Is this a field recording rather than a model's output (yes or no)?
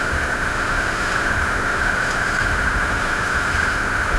no